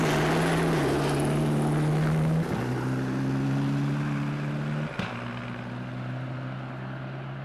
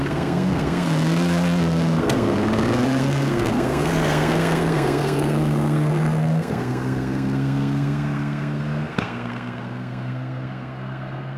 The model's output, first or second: second